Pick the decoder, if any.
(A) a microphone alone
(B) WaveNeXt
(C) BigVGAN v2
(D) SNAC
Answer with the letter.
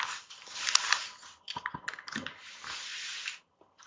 A